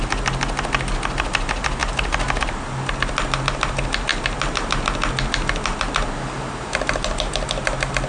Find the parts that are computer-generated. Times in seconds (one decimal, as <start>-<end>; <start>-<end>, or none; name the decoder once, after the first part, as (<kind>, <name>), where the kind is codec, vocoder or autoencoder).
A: none

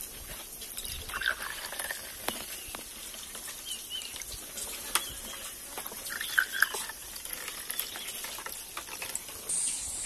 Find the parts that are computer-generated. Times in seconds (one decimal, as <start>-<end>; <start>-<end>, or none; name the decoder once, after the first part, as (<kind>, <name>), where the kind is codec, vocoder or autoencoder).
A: none

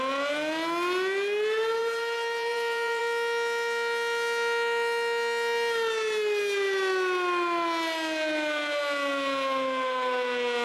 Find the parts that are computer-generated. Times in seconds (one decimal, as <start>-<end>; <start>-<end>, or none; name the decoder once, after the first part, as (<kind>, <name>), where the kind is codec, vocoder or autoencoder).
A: 1.8-3.0 (vocoder, BigVGAN v2)